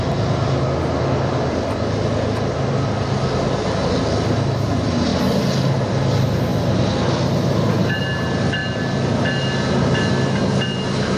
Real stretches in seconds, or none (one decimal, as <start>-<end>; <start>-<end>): 0.0-11.2